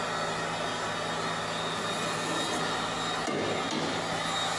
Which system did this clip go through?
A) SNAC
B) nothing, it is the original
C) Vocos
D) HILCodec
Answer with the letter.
B